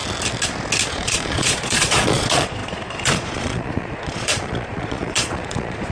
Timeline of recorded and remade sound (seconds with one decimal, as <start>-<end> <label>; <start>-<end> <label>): 0.0-0.9 recorded; 0.9-5.9 remade